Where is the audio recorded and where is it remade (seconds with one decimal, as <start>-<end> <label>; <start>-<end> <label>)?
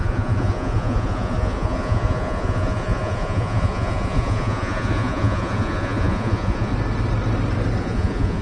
0.0-6.7 remade; 6.7-7.8 recorded; 7.8-8.4 remade